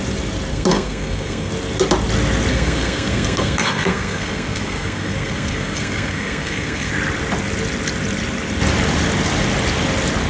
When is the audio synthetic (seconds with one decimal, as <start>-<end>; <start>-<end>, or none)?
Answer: 0.5-1.5; 2.5-6.9